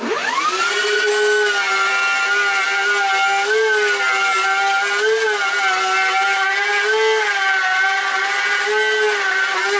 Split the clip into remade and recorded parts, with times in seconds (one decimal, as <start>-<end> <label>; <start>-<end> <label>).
0.0-0.6 recorded; 0.6-1.1 remade; 1.1-9.8 recorded

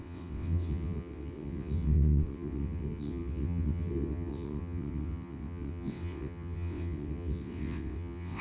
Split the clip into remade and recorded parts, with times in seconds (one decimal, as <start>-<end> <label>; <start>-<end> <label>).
0.0-8.4 remade

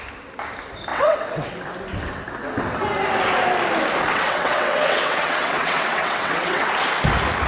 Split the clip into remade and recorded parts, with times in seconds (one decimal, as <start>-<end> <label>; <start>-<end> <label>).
0.0-0.9 recorded; 0.9-1.5 remade; 1.5-4.1 recorded; 4.1-6.7 remade; 6.7-7.5 recorded